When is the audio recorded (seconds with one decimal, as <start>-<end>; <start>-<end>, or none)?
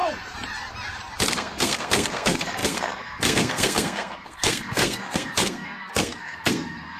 0.0-1.3